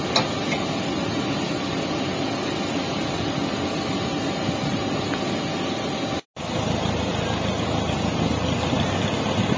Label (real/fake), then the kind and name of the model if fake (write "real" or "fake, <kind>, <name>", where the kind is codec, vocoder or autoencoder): real